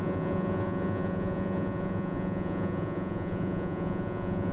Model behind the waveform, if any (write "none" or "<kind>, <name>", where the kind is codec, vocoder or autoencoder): vocoder, Vocos